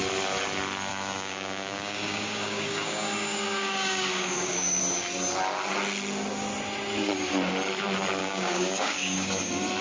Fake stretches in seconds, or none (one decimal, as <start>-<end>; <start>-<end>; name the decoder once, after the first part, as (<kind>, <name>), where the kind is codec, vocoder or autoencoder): 0.9-4.8 (codec, DAC); 8.2-9.3